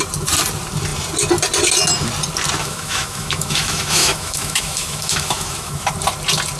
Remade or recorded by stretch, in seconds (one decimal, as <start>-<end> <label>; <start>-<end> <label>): 0.0-2.6 recorded; 2.6-5.9 remade; 5.9-6.6 recorded